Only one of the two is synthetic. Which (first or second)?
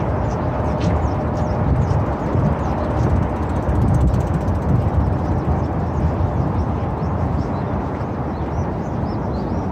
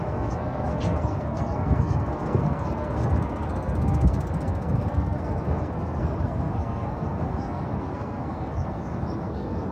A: second